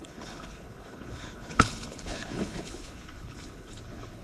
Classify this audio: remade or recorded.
remade